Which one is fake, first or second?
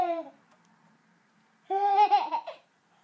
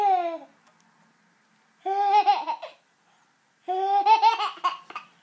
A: first